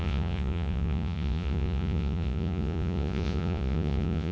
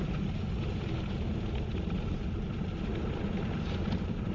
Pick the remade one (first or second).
first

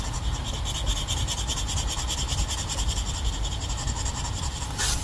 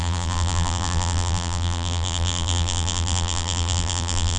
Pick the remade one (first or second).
second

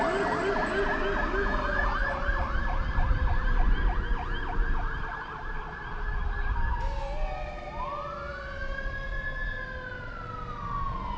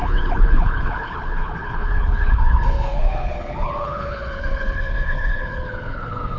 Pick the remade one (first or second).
second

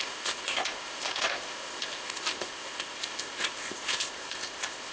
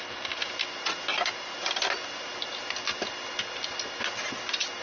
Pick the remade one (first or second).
first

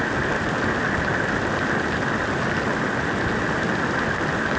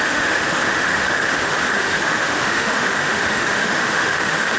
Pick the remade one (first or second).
second